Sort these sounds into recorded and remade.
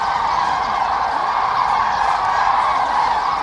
recorded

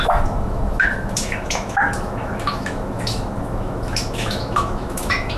remade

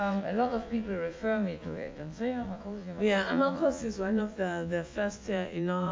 remade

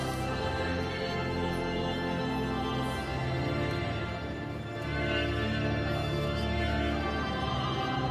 recorded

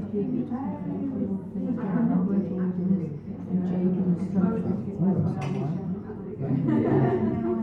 recorded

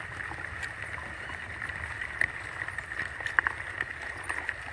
recorded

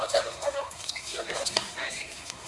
remade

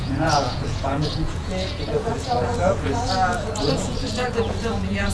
remade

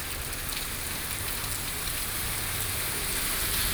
remade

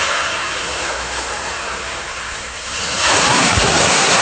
remade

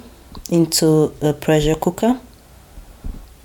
remade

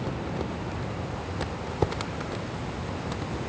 recorded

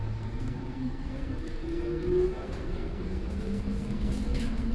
remade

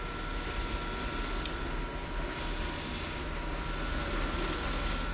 recorded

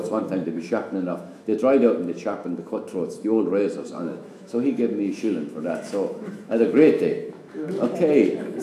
remade